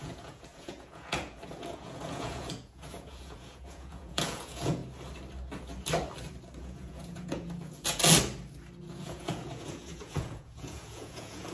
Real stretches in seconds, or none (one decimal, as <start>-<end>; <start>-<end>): 4.8-6.6; 8.0-8.8